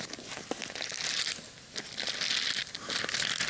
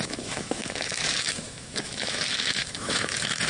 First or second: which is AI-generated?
second